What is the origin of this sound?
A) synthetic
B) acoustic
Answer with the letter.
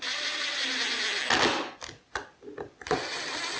B